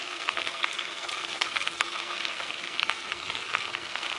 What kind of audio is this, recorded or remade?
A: remade